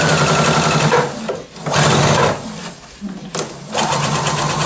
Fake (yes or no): no